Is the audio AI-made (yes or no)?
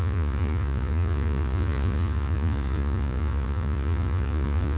yes